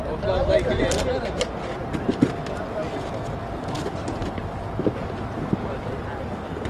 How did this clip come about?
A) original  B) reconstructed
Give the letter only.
A